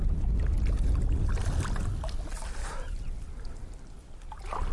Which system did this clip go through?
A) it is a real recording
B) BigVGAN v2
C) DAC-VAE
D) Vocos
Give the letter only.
A